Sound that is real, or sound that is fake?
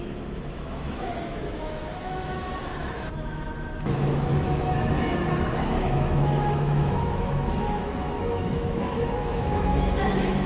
fake